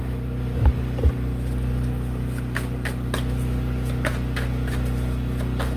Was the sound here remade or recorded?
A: recorded